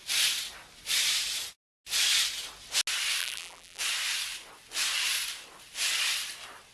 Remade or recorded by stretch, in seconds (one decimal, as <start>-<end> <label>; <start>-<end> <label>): 0.0-3.2 recorded; 3.2-3.8 remade; 3.8-6.7 recorded